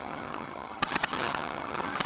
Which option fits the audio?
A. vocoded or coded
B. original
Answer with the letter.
A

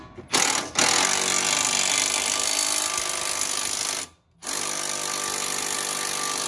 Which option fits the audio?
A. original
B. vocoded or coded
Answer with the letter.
A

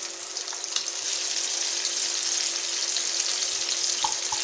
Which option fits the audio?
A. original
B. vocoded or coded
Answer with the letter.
A